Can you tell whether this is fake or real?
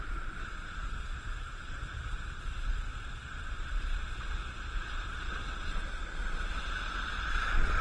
fake